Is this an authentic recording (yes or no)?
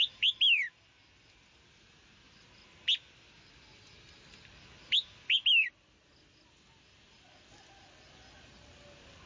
yes